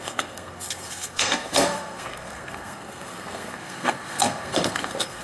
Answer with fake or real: fake